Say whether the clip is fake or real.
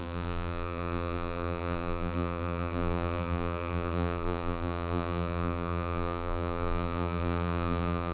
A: fake